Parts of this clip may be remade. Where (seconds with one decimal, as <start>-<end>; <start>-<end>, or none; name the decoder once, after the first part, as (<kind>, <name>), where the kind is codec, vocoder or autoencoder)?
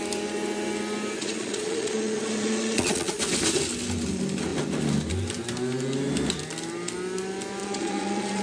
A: 1.2-3.2 (vocoder, Vocos); 7.6-8.4